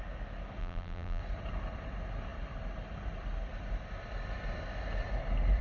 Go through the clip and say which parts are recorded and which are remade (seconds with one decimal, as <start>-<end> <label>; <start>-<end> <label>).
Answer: 0.0-0.6 recorded; 0.6-1.2 remade; 1.2-5.6 recorded